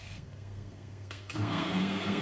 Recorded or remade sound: remade